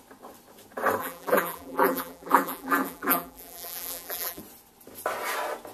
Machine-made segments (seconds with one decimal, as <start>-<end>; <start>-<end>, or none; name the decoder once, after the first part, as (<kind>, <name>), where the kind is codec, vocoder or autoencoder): 1.0-4.4 (vocoder, BigVGAN v2)